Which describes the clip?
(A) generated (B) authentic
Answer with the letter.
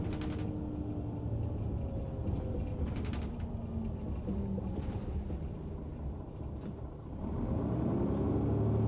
B